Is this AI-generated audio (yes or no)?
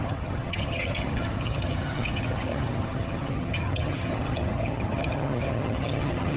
yes